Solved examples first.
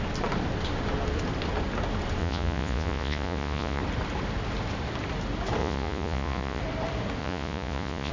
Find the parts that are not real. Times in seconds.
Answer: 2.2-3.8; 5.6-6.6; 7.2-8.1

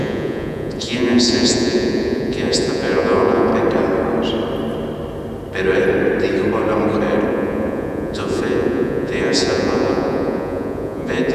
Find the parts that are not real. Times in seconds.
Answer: 0.0-3.5; 7.3-11.3